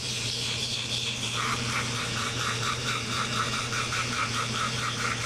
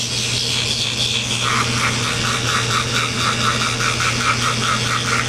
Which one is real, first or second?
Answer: second